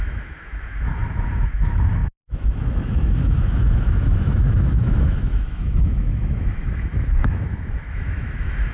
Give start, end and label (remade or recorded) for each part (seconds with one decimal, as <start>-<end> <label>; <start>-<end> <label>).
0.0-8.7 remade